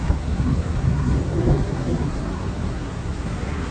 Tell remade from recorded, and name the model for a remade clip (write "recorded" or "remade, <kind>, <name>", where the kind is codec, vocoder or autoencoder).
remade, codec, SNAC